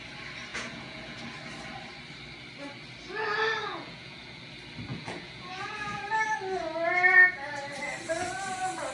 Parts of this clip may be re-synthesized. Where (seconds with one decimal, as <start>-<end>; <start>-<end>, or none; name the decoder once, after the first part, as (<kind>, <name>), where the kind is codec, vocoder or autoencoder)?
0.5-1.2 (vocoder, Vocos); 3.6-4.4; 4.9-6.0